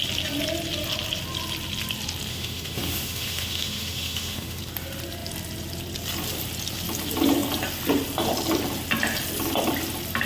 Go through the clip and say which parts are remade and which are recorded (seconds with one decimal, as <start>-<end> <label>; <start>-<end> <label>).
0.0-2.3 recorded; 2.3-4.6 remade; 4.6-10.3 recorded